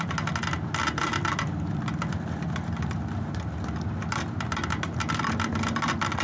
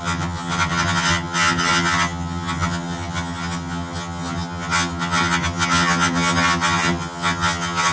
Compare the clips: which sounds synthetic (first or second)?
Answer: second